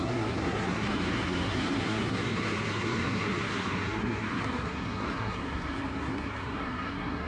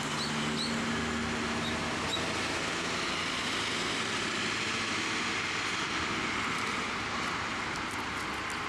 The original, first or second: second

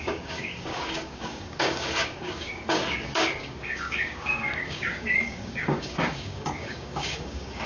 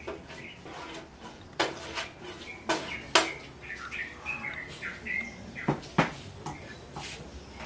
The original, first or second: second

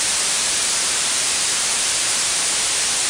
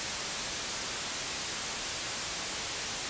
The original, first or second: second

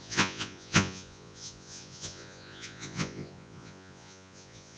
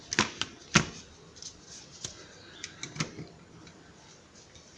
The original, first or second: second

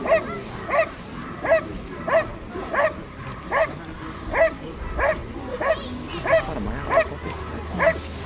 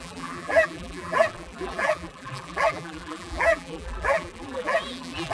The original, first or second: first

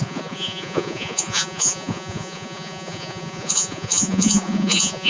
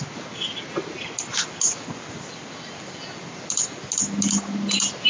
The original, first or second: second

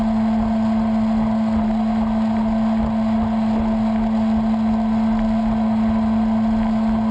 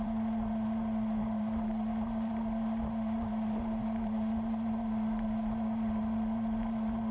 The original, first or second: first